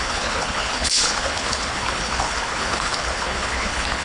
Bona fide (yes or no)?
no